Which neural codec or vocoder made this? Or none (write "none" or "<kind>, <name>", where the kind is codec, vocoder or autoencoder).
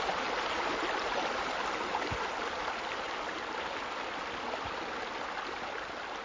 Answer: none